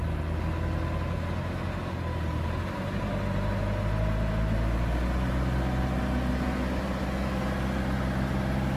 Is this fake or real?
real